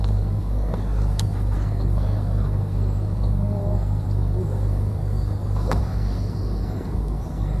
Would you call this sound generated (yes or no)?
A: yes